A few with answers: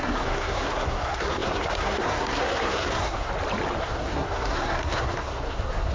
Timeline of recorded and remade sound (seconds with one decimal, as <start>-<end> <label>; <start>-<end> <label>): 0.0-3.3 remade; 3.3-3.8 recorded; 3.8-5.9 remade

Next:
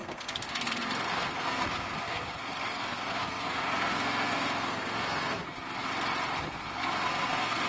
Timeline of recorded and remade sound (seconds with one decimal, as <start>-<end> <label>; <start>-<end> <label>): 0.0-5.9 remade; 5.9-6.4 recorded; 6.4-7.7 remade

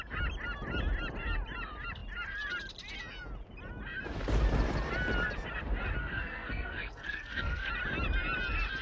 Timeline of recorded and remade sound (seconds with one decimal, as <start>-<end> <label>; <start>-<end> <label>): 0.0-6.0 recorded; 6.0-7.7 remade; 7.7-8.8 recorded

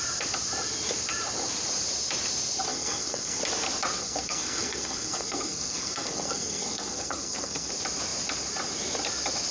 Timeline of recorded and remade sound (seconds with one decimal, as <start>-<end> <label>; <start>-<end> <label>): 0.0-2.7 recorded; 2.7-3.4 remade; 3.4-4.0 recorded; 4.0-7.7 remade; 7.7-9.5 recorded

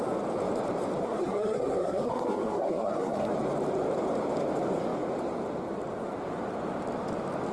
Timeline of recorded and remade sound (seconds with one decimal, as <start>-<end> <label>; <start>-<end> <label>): 0.0-1.0 recorded; 1.0-3.3 remade; 3.3-7.5 recorded

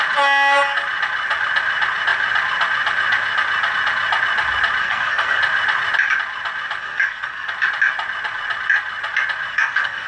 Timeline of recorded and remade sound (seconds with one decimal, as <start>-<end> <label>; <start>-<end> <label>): 0.0-4.8 recorded; 4.8-5.4 remade; 5.4-6.8 recorded; 6.8-7.5 remade; 7.5-9.5 recorded; 9.5-10.1 remade